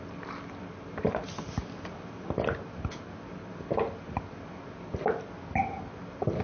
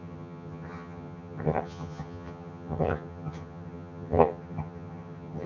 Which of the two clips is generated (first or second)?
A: second